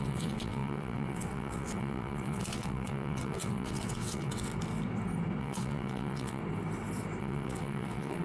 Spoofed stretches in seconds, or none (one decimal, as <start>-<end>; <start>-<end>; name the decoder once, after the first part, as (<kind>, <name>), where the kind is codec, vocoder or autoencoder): 0.0-4.5 (vocoder, WaveNeXt); 5.4-6.4; 7.2-8.2